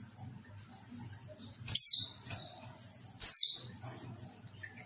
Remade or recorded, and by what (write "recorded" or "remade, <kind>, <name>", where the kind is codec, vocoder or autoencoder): recorded